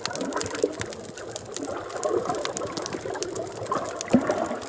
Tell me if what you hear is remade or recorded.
recorded